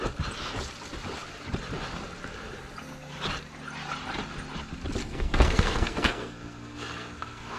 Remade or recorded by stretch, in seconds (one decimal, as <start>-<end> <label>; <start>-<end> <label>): 0.0-5.0 recorded; 5.0-7.6 remade